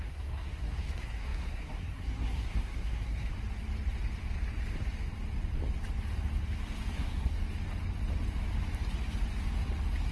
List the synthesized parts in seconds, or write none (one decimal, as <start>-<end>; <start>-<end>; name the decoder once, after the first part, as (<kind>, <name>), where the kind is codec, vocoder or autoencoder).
0.0-3.3 (codec, SNAC); 6.9-7.4